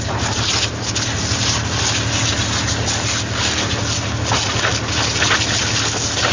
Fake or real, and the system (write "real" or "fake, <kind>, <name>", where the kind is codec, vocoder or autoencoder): real